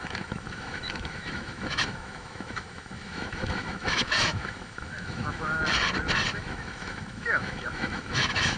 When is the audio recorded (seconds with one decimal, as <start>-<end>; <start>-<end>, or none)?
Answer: 5.6-6.3